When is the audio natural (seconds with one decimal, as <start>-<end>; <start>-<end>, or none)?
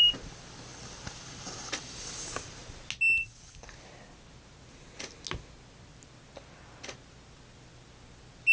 0.0-8.5